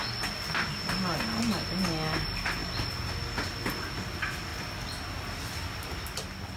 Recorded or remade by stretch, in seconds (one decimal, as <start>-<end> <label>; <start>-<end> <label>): 0.0-6.6 recorded